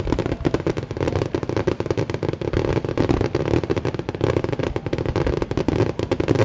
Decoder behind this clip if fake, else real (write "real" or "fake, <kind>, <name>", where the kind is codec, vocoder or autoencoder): real